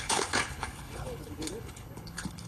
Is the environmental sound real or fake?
fake